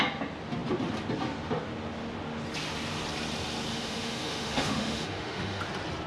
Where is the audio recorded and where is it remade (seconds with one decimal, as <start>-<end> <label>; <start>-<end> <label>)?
0.0-3.7 recorded; 3.7-5.6 remade; 5.6-6.1 recorded

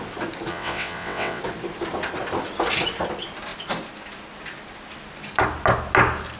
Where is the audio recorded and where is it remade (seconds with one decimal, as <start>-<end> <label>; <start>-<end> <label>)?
0.0-0.5 recorded; 0.5-1.4 remade; 1.4-6.4 recorded